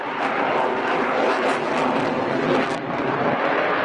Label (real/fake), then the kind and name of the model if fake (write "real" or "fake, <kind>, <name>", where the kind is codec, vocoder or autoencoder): real